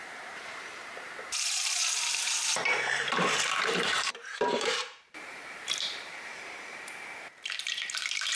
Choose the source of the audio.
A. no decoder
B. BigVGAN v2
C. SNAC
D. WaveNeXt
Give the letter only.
B